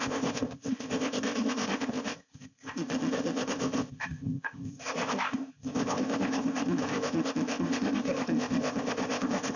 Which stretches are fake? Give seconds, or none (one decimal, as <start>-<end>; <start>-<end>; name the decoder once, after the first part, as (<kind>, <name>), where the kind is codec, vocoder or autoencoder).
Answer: 0.0-9.6 (codec, ZipCodec)

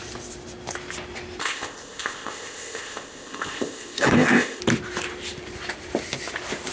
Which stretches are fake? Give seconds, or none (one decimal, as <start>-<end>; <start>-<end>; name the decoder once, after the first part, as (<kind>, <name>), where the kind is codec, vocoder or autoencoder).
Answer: 1.4-4.6 (codec, ZipCodec)

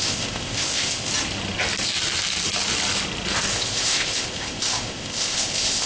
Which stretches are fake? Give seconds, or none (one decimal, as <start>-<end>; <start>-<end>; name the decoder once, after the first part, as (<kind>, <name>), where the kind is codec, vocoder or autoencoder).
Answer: 0.0-1.1 (codec, ZipCodec); 3.5-5.9

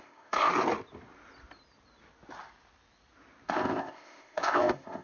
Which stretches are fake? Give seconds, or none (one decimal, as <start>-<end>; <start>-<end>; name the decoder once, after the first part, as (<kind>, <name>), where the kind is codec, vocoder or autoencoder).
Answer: 0.0-0.5 (codec, ZipCodec); 3.5-5.0